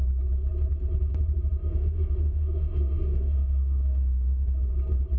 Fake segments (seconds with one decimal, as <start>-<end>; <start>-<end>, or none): 1.6-4.7